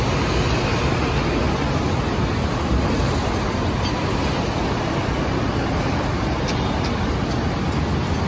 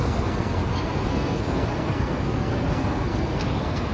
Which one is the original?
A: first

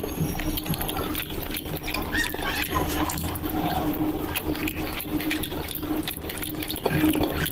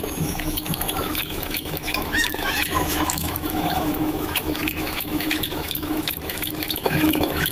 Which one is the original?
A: first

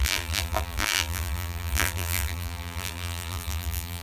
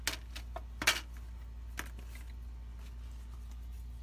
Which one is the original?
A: second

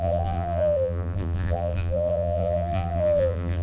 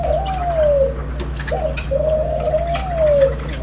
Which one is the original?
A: second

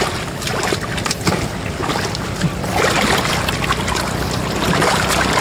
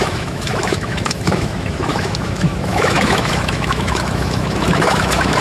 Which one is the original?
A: first